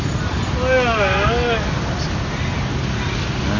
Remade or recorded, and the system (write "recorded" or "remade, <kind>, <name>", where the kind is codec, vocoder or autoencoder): recorded